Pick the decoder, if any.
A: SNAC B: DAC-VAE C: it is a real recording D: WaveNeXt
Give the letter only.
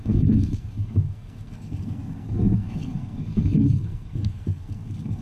A